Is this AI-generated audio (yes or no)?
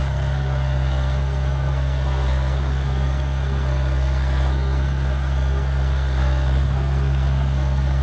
yes